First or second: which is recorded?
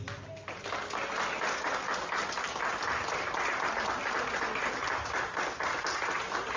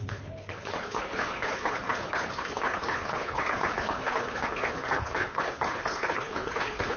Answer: first